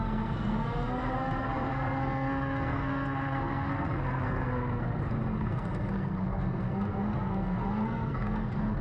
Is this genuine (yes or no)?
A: no